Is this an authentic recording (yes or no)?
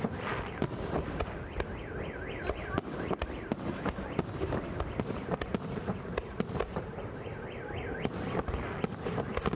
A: yes